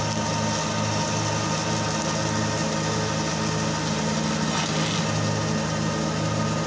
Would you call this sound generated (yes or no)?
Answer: no